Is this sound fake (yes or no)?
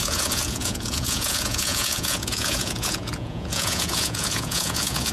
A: yes